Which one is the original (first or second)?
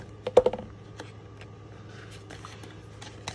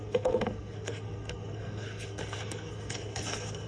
first